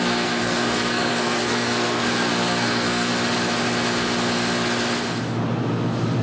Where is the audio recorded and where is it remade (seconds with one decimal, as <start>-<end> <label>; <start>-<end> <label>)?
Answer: 0.0-3.1 remade; 3.1-6.2 recorded